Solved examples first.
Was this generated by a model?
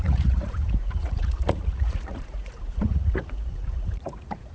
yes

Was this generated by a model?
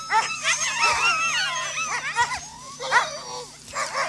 no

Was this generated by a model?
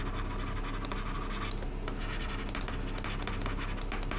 no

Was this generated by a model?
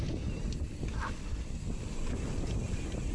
no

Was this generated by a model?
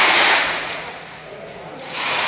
yes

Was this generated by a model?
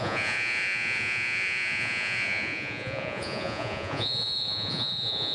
yes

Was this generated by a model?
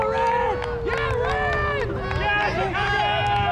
no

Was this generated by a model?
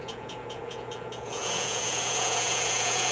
yes